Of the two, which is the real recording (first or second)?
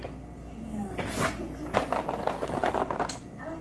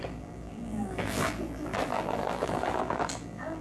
first